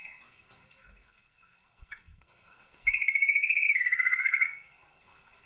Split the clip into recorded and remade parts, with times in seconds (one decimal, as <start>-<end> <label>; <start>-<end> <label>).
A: 0.0-5.5 remade